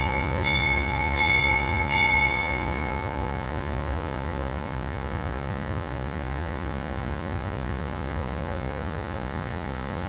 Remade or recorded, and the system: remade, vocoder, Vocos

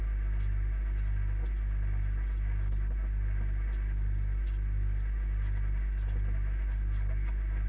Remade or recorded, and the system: recorded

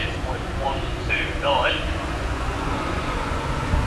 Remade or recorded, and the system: remade, vocoder, Vocos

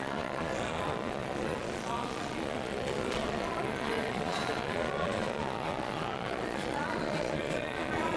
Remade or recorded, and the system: remade, vocoder, Vocos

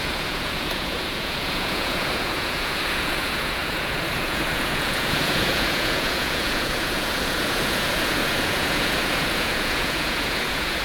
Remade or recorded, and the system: remade, vocoder, Vocos